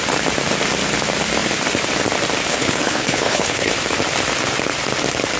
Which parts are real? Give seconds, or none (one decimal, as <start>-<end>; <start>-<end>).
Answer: 0.0-2.5; 3.7-5.4